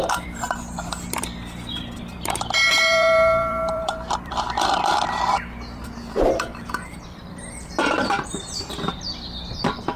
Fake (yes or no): yes